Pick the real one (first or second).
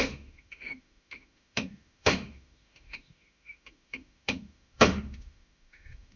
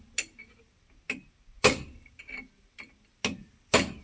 second